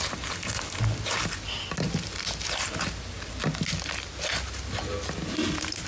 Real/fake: real